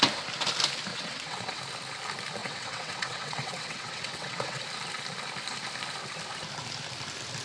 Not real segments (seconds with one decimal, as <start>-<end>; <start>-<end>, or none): 0.9-1.6; 2.4-4.6